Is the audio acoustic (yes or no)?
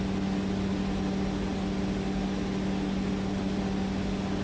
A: yes